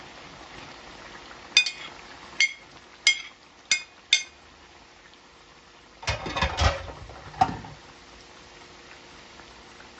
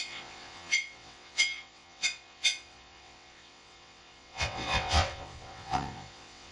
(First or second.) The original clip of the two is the first